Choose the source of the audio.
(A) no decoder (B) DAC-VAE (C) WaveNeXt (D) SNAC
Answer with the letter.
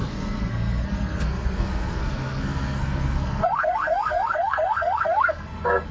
D